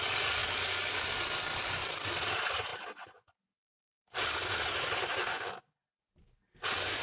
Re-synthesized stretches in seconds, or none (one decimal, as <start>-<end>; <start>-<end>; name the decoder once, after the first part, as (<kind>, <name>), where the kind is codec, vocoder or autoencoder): none